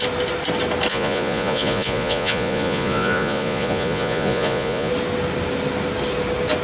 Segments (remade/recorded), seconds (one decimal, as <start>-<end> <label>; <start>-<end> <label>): 0.0-0.9 recorded; 0.9-4.9 remade; 4.9-6.6 recorded